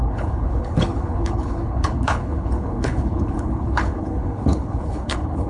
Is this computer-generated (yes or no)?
yes